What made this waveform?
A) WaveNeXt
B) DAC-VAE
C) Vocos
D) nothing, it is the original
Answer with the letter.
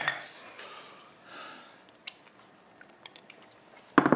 D